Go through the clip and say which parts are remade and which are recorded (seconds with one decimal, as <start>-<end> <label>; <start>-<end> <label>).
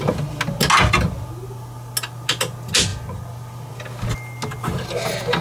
0.0-5.4 recorded